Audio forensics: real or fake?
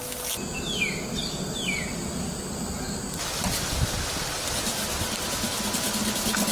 real